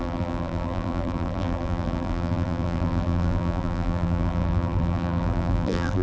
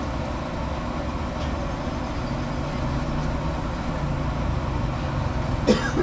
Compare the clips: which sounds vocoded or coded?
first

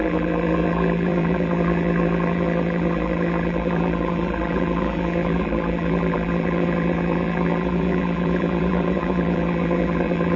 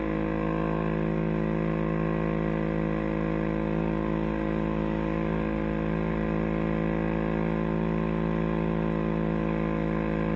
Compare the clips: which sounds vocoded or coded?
first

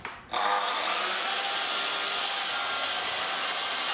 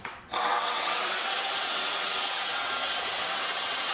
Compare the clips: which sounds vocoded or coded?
second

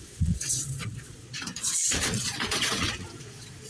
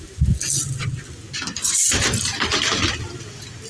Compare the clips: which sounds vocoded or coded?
first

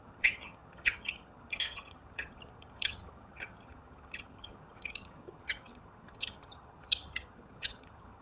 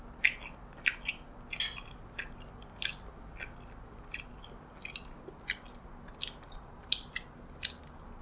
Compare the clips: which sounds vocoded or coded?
first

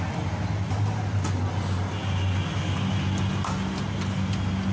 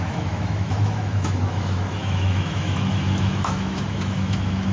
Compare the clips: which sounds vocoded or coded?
second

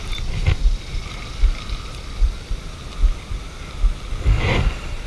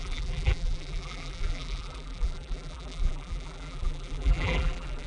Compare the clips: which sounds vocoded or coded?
second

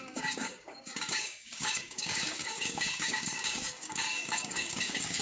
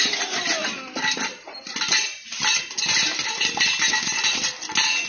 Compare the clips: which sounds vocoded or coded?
first